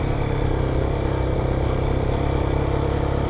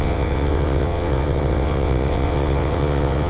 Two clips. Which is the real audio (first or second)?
first